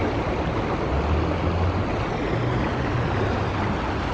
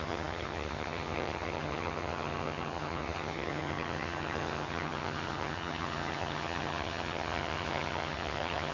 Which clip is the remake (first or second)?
second